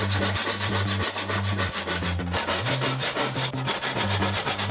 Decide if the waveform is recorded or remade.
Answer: recorded